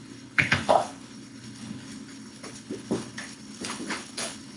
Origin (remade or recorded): remade